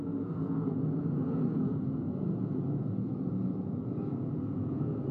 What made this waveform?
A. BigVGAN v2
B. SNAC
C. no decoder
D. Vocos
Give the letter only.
D